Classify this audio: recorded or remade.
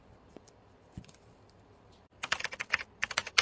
remade